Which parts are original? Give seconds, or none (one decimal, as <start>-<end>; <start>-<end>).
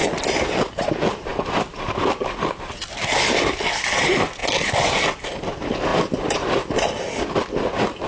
0.7-4.4; 5.4-8.1